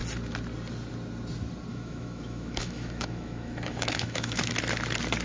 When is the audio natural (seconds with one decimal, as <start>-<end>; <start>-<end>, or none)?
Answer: 0.0-1.7; 4.5-5.2